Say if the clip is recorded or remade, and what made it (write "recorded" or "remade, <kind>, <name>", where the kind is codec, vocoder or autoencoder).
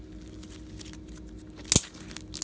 recorded